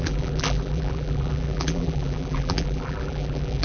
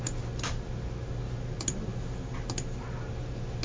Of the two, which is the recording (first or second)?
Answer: second